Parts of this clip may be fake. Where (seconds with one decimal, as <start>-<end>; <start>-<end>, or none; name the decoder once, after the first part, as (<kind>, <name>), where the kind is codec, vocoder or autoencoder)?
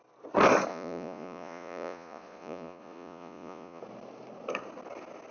0.7-3.8 (vocoder, Vocos)